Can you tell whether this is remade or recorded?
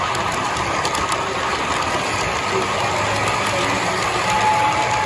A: recorded